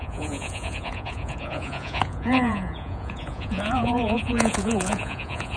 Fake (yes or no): yes